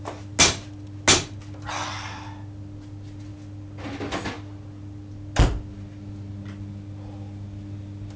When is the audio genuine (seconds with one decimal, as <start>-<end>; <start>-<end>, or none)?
0.0-8.2